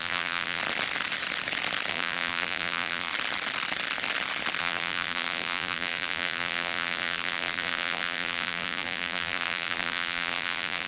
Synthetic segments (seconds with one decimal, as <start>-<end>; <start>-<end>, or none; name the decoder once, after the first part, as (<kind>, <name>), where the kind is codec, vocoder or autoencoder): 0.0-0.6 (vocoder, BigVGAN v2); 1.9-3.1; 4.6-10.9